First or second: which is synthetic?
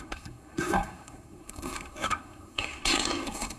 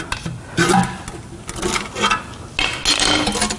first